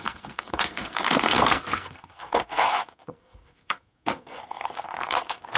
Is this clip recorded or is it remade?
remade